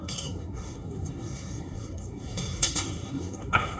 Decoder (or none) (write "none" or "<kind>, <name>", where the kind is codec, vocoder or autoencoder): codec, SNAC